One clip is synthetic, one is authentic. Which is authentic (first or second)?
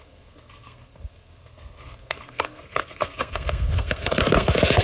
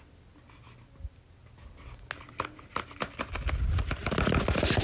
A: second